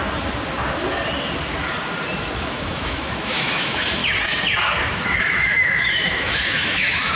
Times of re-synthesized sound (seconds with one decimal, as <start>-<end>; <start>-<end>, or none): 2.4-4.0; 5.2-7.2